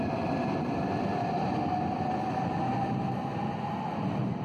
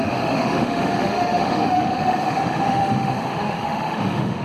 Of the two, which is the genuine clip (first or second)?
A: first